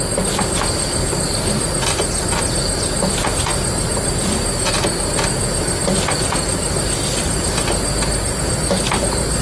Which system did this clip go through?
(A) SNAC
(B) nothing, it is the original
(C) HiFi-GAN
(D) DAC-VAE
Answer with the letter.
B